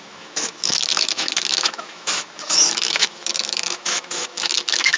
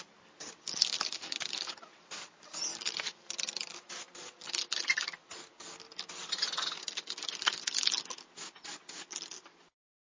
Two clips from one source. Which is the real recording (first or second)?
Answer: second